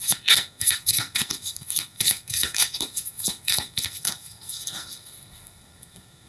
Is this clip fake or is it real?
fake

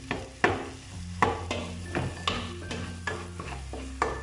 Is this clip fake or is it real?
real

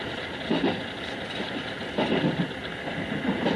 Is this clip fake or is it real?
real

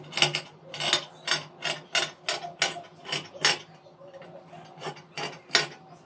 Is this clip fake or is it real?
real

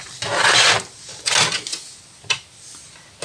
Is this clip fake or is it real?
real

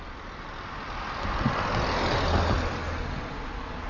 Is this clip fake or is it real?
real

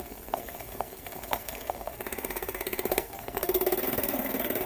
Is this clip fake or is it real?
fake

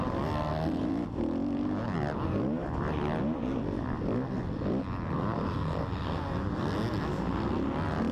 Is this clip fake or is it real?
real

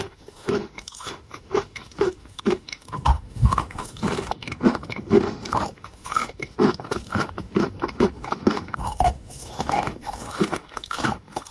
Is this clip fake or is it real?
fake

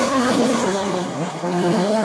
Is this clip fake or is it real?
fake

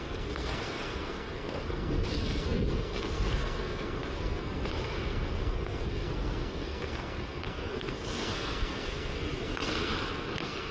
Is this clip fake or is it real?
fake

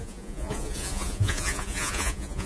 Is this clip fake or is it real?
fake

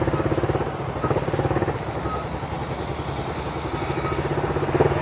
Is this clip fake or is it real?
real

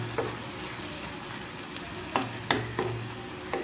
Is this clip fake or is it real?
real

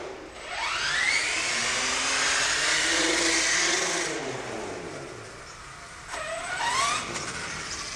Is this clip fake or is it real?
real